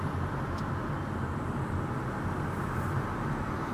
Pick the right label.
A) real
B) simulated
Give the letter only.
A